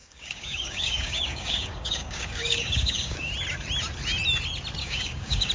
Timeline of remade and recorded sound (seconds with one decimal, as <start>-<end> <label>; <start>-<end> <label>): 0.0-3.3 remade; 3.3-4.8 recorded; 4.8-5.5 remade